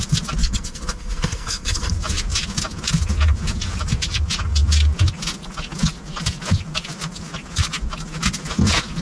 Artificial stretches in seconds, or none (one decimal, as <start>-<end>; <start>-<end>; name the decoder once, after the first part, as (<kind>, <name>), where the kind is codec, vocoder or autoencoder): 0.4-1.9 (codec, SNAC)